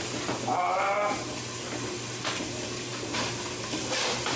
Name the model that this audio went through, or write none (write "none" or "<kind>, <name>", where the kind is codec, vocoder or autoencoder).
vocoder, BigVGAN v2